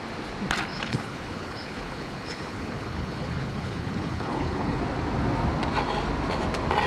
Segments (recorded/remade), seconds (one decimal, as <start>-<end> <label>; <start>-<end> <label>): 0.0-0.7 recorded; 0.7-4.8 remade; 4.8-6.9 recorded